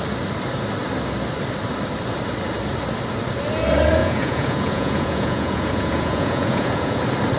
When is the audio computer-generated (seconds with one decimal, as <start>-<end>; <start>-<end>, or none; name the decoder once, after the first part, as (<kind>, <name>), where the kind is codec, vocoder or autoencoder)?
4.0-7.0 (vocoder, Vocos)